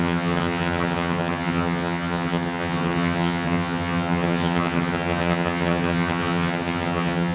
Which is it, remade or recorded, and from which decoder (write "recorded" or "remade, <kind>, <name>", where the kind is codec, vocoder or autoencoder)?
remade, vocoder, HiFi-GAN